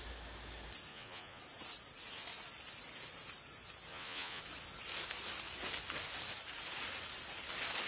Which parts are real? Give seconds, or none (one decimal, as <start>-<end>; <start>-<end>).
0.0-0.9; 1.4-3.9; 4.4-7.9